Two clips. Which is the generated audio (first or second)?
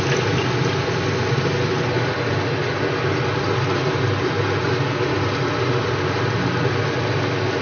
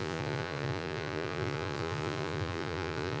second